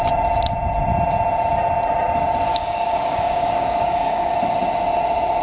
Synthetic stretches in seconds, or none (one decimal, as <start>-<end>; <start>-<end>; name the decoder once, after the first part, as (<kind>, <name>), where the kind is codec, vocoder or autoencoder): 2.5-4.3 (codec, DAC)